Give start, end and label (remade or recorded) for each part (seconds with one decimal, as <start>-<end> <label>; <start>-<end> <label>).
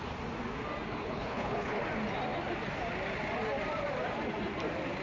0.0-1.0 recorded; 1.0-1.8 remade; 1.8-5.0 recorded